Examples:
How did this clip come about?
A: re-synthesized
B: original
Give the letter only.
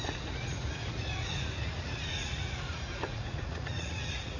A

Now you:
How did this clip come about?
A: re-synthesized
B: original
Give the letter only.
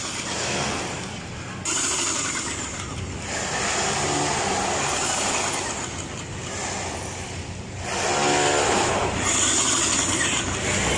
B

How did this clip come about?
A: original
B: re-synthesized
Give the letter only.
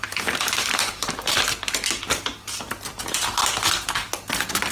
A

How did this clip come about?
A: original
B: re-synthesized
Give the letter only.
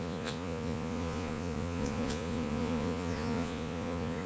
B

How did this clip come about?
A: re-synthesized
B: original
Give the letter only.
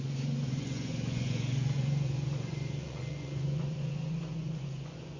A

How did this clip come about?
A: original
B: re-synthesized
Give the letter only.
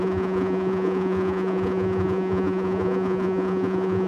B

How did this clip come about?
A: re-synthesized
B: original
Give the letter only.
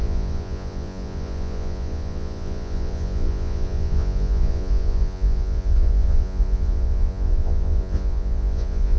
A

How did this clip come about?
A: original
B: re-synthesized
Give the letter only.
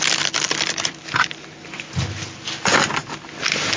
A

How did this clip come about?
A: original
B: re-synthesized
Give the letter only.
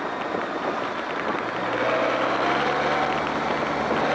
A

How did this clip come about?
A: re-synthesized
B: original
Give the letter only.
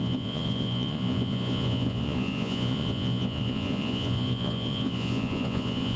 A